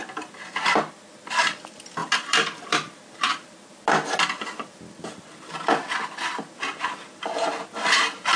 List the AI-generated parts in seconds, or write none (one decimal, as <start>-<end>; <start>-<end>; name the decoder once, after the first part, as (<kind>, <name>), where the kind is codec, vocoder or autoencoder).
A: 2.0-5.4 (vocoder, BigVGAN v2)